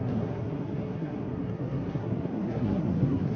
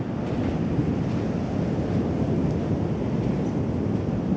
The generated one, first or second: first